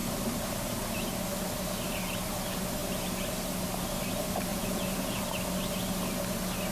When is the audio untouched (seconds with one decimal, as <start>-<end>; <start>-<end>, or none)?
0.0-4.5; 5.2-6.7